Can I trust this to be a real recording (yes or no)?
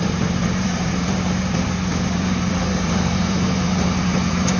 no